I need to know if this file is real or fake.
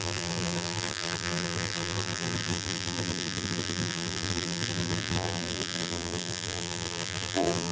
fake